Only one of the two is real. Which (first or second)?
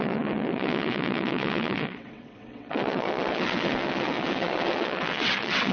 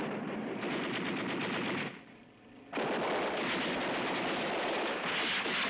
second